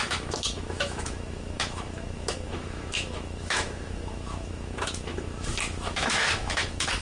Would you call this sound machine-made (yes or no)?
yes